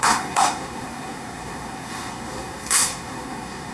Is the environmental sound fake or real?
fake